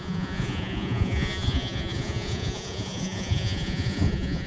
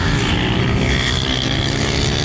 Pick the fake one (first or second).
first